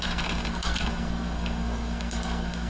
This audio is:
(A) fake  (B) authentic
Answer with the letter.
A